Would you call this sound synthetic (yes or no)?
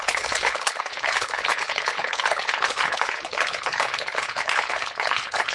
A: yes